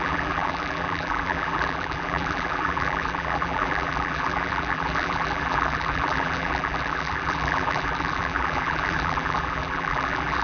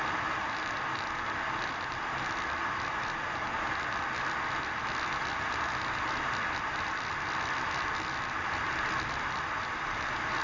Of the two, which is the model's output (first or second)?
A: first